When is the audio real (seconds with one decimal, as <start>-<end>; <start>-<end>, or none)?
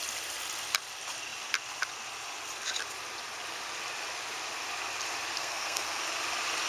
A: 0.0-5.4; 6.0-6.7